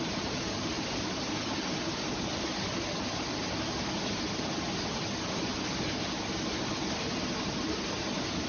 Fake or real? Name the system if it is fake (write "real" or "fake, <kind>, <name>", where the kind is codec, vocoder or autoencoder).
real